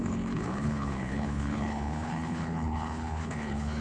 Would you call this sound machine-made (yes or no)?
yes